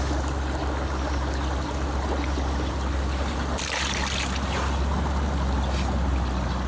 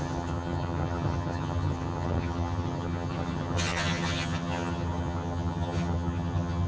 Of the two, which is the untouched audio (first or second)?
first